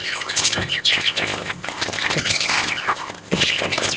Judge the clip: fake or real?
fake